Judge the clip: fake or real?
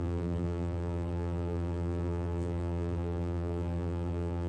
fake